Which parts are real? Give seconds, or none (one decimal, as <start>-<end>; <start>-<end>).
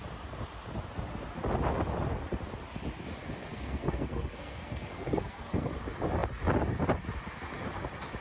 0.0-3.5; 5.7-8.2